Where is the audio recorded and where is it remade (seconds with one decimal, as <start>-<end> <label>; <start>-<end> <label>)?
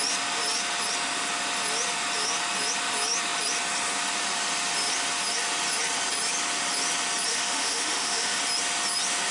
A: 0.0-7.3 recorded; 7.3-8.4 remade; 8.4-9.3 recorded